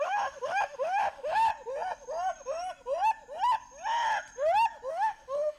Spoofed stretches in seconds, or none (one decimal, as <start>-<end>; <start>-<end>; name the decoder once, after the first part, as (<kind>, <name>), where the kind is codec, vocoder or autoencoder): 0.0-1.5 (autoencoder, DAC-VAE); 4.9-5.6